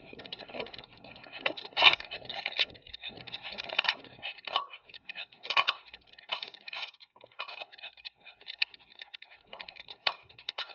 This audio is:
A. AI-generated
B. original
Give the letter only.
A